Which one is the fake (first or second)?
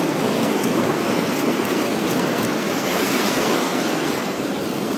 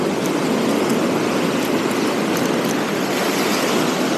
first